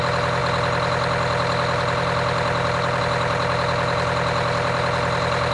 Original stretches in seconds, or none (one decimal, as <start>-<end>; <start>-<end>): 0.0-5.5